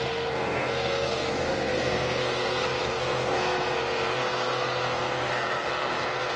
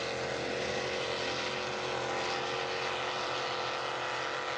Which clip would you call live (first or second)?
second